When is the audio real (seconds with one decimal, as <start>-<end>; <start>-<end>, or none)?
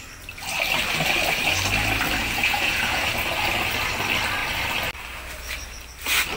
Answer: 0.0-2.2; 3.0-6.4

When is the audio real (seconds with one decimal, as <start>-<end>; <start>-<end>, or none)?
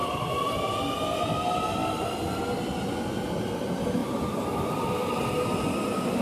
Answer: 1.2-1.8; 2.4-4.0; 5.4-6.2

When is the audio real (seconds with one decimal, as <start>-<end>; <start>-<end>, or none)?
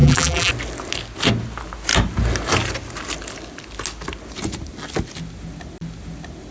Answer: 0.5-6.5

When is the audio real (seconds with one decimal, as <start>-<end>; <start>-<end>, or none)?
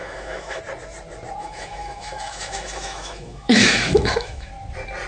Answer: 0.6-1.4; 4.5-5.1